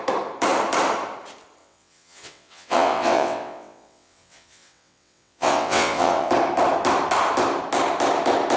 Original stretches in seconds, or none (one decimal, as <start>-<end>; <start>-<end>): 0.0-1.6; 6.3-8.6